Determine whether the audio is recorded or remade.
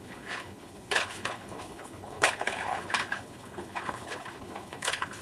remade